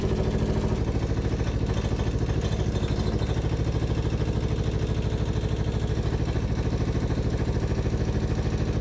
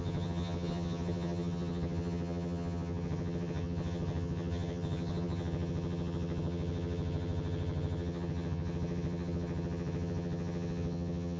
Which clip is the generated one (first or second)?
second